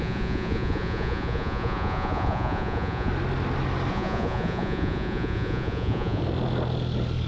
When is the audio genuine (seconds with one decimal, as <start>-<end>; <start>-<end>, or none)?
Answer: 3.1-3.9; 6.2-7.3